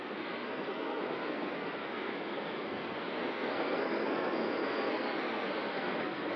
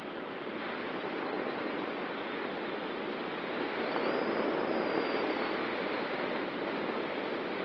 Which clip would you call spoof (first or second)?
first